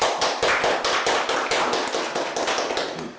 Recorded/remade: recorded